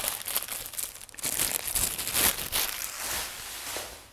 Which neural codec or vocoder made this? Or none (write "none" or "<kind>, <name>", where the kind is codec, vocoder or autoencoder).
none